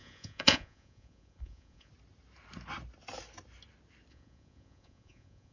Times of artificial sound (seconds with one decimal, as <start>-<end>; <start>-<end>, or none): 0.0-1.9; 4.1-5.5